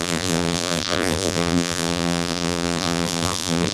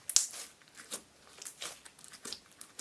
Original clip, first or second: second